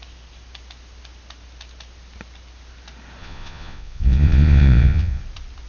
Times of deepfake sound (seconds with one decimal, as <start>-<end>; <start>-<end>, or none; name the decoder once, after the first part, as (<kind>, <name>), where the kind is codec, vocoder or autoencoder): 3.2-5.2 (vocoder, Vocos)